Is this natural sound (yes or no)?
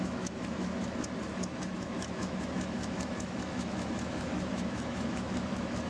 no